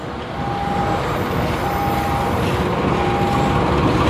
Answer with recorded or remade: recorded